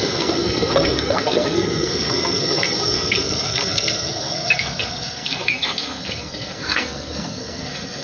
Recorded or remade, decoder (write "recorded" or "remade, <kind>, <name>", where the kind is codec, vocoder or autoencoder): remade, codec, SNAC